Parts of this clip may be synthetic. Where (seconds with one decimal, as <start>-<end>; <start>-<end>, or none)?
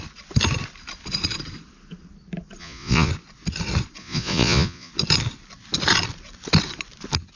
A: 2.6-3.1; 4.0-4.9